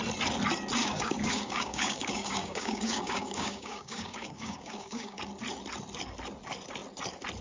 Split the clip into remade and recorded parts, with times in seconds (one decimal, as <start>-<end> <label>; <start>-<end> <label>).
0.0-0.8 recorded; 0.8-5.2 remade; 5.2-7.4 recorded